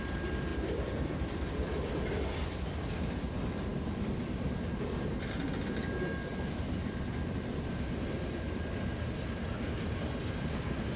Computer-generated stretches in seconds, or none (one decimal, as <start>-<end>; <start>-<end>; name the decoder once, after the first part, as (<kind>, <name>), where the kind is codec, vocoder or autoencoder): none